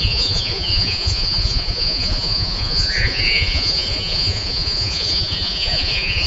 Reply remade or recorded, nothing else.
remade